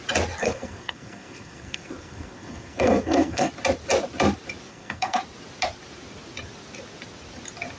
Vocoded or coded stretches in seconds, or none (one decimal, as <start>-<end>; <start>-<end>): 0.4-3.5; 4.7-5.2